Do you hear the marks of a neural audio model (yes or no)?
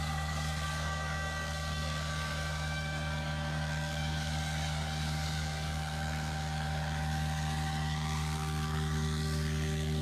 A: yes